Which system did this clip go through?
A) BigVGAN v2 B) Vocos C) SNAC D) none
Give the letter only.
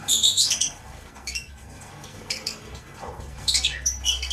C